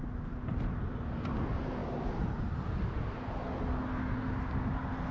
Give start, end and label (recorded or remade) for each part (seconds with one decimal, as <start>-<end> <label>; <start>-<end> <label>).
0.0-5.1 recorded